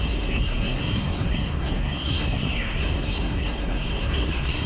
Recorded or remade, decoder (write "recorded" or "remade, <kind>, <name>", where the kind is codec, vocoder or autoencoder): remade, codec, SNAC